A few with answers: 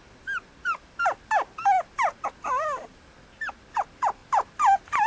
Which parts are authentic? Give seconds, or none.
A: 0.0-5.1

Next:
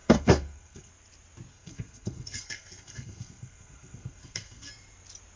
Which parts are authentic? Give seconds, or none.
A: 0.9-1.5; 4.7-5.4

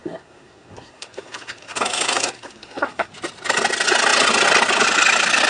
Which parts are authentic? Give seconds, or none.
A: 3.1-5.5

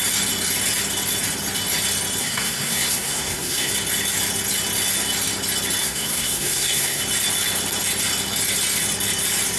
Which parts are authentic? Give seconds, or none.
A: 0.0-2.2; 3.7-5.8; 7.0-9.6